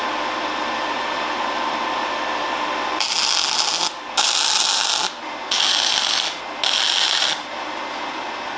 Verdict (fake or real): real